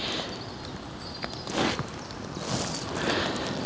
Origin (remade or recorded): recorded